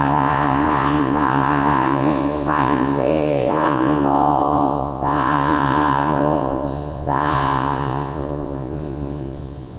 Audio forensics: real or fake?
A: fake